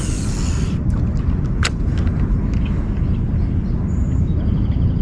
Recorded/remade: recorded